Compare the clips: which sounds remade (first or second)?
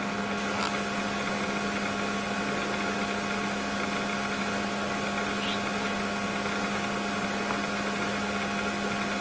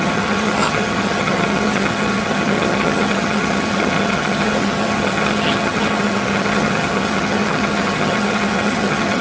second